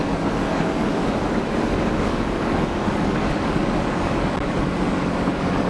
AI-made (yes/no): yes